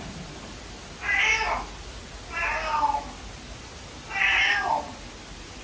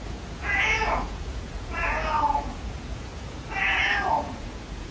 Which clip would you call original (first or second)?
first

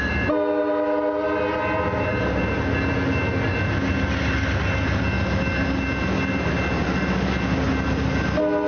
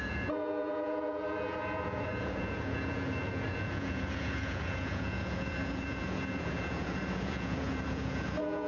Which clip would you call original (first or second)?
first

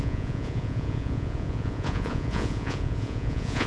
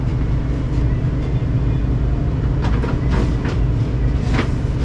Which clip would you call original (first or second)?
second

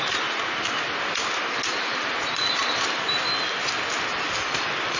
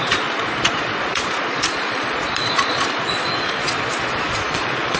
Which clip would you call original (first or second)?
first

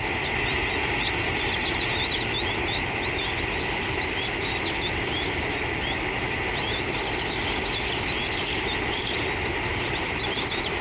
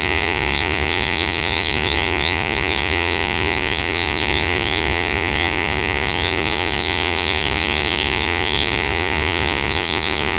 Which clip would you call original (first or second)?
first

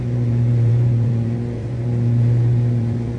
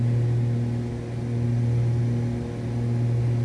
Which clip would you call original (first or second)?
second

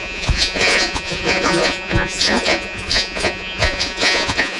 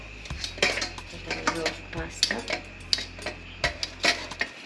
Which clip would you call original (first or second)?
second